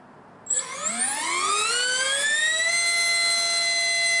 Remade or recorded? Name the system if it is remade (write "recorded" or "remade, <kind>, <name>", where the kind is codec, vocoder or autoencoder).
recorded